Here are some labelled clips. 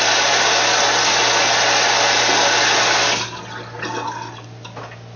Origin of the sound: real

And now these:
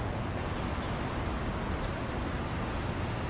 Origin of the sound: real